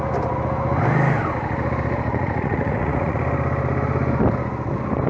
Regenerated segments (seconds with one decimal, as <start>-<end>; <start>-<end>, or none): 2.1-3.2